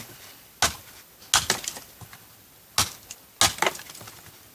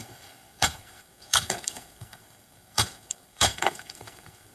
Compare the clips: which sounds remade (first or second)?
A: second